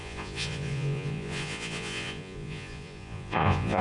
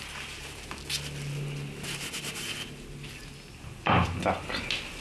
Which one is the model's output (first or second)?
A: first